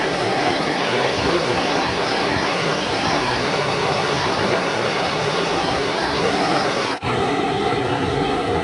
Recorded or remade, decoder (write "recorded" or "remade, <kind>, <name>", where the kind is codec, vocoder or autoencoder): remade, codec, SNAC